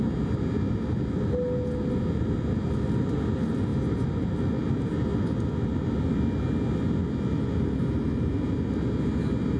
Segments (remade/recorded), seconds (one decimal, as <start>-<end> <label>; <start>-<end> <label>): 0.0-9.6 recorded